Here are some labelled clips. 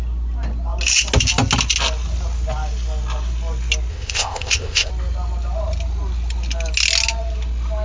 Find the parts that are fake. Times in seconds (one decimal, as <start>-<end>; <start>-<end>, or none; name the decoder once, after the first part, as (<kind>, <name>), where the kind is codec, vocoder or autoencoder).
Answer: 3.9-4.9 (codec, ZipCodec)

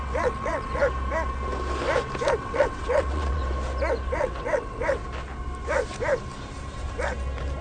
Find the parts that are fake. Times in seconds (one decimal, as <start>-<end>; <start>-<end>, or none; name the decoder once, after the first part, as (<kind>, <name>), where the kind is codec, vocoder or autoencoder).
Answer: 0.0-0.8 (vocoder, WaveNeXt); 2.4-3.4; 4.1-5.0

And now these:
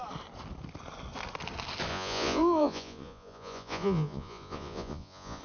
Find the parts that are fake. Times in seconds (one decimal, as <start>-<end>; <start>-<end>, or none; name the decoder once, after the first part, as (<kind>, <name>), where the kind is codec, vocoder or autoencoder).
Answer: 1.9-5.4 (vocoder, Vocos)